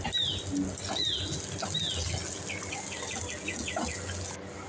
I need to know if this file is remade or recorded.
recorded